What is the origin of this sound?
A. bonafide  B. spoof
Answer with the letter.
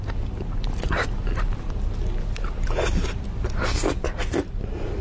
A